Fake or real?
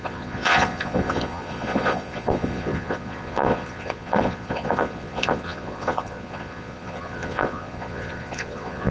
fake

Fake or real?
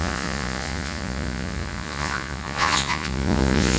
fake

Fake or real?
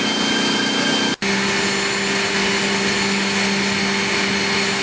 real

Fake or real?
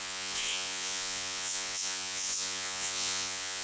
fake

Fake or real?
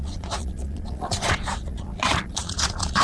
fake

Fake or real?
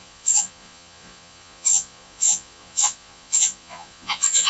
fake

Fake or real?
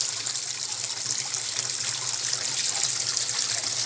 real